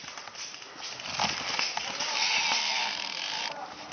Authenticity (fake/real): real